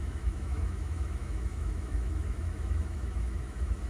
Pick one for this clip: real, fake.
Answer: fake